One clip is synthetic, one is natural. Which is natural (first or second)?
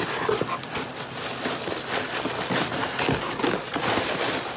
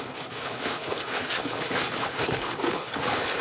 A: first